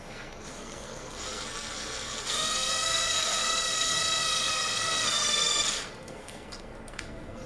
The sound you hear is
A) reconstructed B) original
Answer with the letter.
A